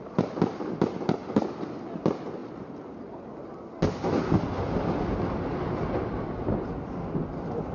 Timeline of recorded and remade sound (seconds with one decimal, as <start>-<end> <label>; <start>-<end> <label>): 0.0-7.7 recorded